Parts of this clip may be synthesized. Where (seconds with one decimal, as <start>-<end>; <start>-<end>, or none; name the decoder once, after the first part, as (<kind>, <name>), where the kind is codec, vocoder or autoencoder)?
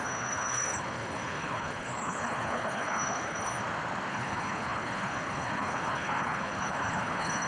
0.0-3.5 (codec, HILCodec); 4.1-7.5